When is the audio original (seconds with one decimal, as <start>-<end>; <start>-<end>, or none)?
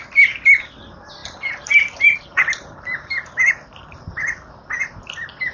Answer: 0.0-1.2; 4.5-5.5